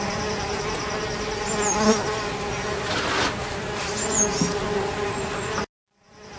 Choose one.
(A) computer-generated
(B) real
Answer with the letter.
B